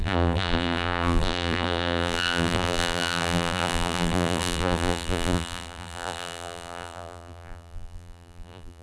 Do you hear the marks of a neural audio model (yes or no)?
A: yes